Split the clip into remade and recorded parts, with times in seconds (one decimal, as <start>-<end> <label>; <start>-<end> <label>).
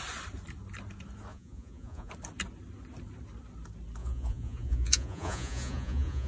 0.0-1.3 recorded; 1.3-2.1 remade; 2.1-4.0 recorded; 4.0-6.3 remade